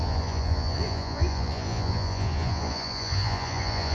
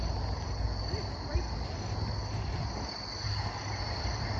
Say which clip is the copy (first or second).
first